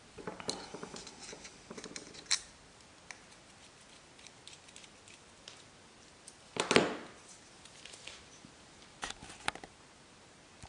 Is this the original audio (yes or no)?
yes